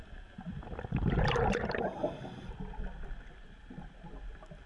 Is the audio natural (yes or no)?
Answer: yes